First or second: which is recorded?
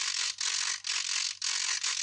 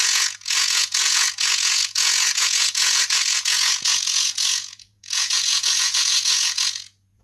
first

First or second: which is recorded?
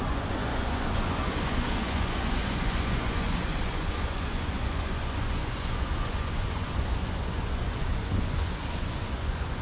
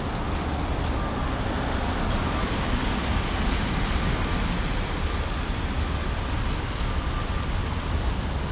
second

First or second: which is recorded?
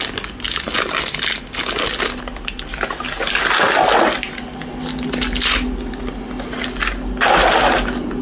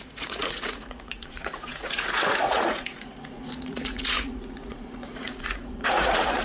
first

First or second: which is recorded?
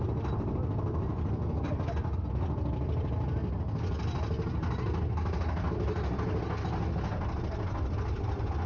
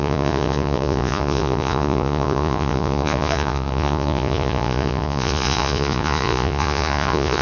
first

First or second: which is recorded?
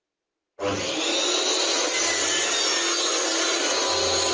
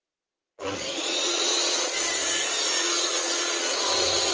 first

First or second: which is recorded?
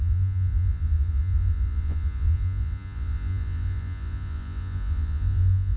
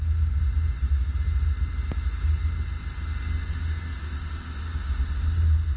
second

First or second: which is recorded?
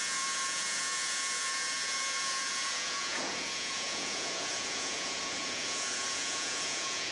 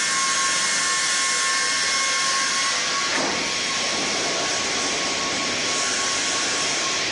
second